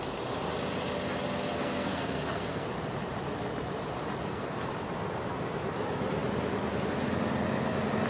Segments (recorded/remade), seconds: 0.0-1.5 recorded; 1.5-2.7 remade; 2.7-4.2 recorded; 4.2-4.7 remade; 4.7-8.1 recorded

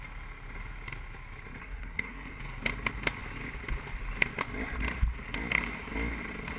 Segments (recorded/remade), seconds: 0.0-1.6 recorded; 1.6-2.4 remade; 2.4-6.6 recorded

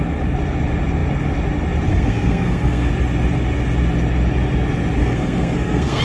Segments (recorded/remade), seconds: 0.0-1.9 recorded; 1.9-2.9 remade; 2.9-5.0 recorded; 5.0-6.0 remade

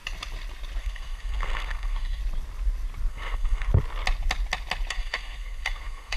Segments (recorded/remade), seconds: 0.0-0.8 recorded; 0.8-2.2 remade; 2.2-3.1 recorded; 3.1-3.7 remade; 3.7-4.9 recorded; 4.9-6.2 remade